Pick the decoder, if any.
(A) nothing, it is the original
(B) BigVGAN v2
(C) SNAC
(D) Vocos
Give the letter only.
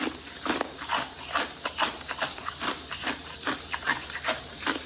B